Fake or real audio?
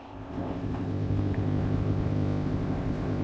fake